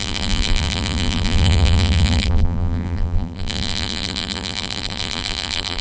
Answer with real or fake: fake